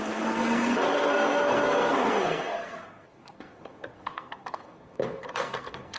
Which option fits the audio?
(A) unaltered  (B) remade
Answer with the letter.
B